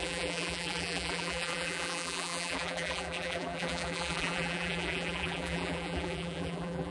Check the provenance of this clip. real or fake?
fake